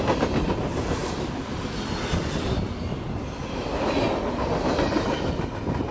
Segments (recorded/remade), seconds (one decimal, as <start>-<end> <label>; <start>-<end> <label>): 0.0-5.9 recorded